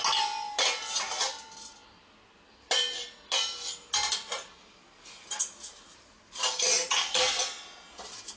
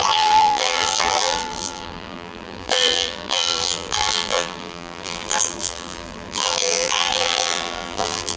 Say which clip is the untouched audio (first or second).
first